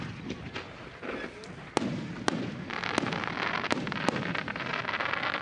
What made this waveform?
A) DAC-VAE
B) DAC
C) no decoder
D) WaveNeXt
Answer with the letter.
C